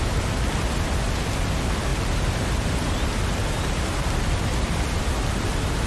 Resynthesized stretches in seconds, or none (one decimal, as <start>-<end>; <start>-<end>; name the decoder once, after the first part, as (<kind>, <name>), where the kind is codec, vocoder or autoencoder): 1.9-4.1 (vocoder, BigVGAN v2)